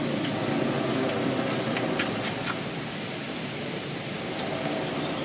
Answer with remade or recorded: recorded